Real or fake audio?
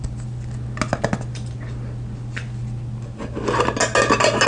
real